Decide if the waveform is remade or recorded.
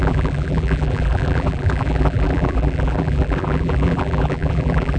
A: remade